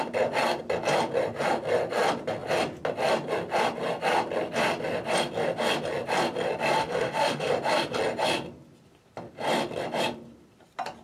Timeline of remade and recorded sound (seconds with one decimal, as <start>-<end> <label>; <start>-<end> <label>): 0.0-6.8 recorded; 6.8-7.5 remade; 7.5-11.0 recorded